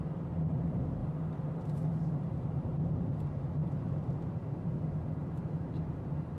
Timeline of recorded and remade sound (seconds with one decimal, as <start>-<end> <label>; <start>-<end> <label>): 0.0-1.0 remade; 1.0-2.0 recorded; 2.0-4.4 remade; 4.4-5.2 recorded; 5.2-6.4 remade